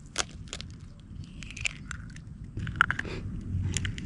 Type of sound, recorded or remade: recorded